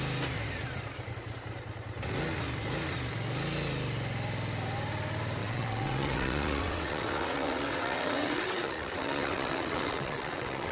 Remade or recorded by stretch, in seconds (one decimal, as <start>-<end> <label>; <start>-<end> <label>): 0.0-5.4 recorded; 5.4-10.7 remade